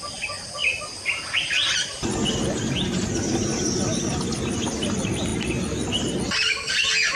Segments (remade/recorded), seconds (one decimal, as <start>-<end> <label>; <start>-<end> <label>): 0.0-7.2 recorded